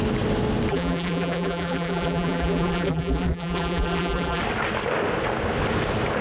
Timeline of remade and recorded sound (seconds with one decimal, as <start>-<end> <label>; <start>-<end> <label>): 0.0-0.7 recorded; 0.7-4.4 remade; 4.4-6.2 recorded